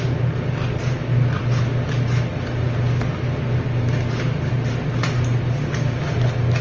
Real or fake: real